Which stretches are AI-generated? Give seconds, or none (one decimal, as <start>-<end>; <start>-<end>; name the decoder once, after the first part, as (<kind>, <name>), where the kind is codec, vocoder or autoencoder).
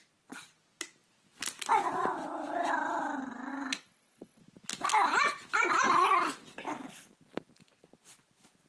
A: 3.5-4.4 (vocoder, WaveNeXt)